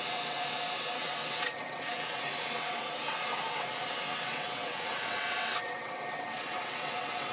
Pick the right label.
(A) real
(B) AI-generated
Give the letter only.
B